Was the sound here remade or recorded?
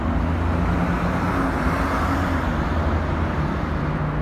recorded